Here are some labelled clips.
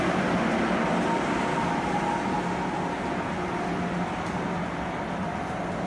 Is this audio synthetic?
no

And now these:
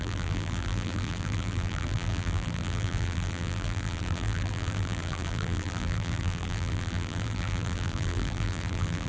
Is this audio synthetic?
yes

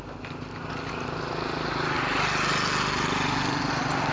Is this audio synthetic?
no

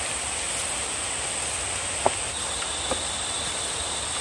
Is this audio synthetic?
no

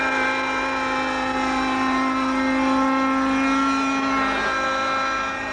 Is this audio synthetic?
no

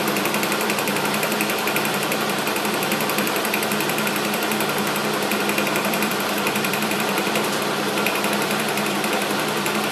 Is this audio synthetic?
yes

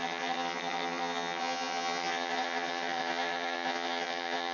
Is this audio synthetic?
yes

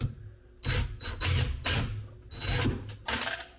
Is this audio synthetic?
no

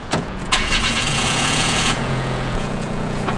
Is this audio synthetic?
yes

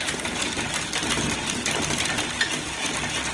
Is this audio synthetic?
no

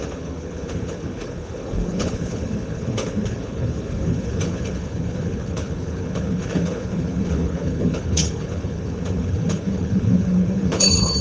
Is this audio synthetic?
yes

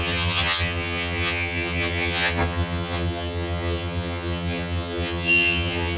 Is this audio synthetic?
yes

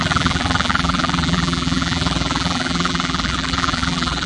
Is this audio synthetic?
yes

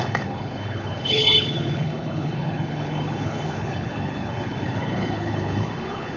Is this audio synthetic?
yes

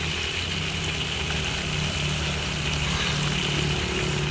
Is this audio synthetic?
no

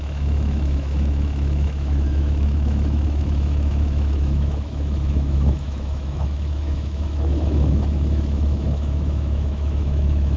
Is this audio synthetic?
yes